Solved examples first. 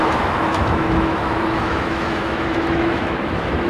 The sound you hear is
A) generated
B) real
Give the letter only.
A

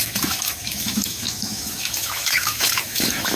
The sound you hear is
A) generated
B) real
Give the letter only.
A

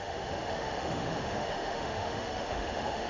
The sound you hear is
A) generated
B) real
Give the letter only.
A